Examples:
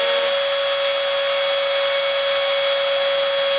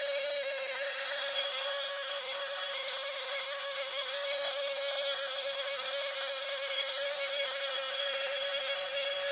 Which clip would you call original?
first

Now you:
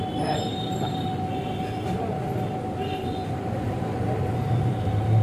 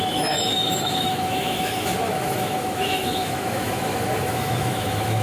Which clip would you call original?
first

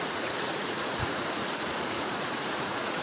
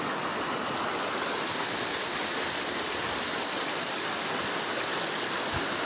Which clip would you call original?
second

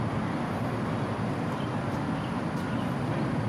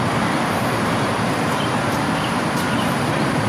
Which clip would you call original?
first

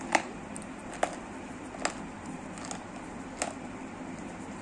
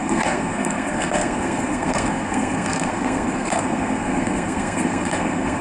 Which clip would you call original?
first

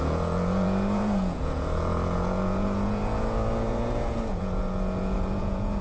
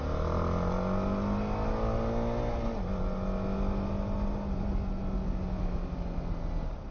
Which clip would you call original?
second